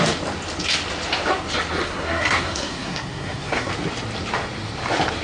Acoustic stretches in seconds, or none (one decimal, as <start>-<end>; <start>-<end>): 0.0-1.8; 3.7-5.2